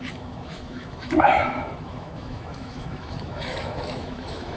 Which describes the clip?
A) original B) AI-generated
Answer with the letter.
B